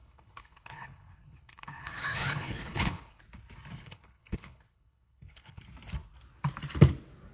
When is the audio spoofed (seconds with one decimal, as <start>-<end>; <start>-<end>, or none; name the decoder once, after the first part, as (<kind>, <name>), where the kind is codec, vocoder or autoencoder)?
0.0-3.2 (codec, HILCodec); 3.8-5.6